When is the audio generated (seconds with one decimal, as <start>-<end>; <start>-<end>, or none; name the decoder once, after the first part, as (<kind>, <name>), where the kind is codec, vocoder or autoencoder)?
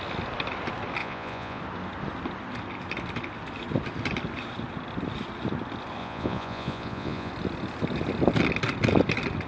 1.0-1.6 (vocoder, Vocos); 6.0-7.3